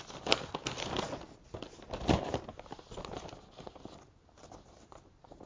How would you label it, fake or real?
real